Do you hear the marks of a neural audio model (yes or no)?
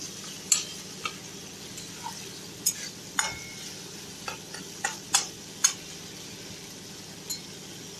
no